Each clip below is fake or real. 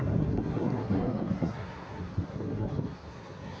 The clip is fake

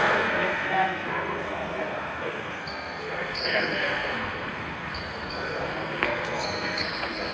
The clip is fake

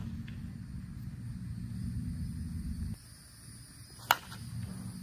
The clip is real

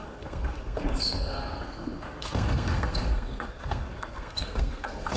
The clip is fake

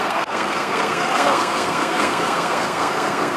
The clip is fake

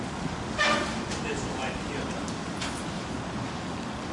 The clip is real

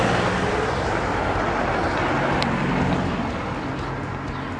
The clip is real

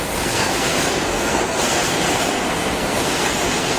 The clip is fake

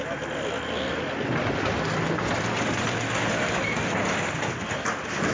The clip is real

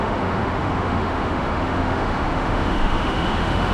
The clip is fake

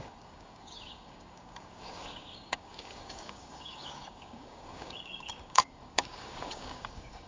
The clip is fake